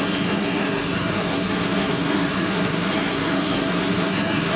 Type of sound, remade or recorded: remade